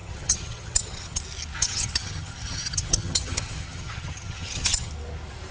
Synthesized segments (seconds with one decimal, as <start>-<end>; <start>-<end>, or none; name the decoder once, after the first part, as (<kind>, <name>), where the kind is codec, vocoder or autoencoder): 0.0-1.2 (vocoder, HiFi-GAN); 1.6-4.9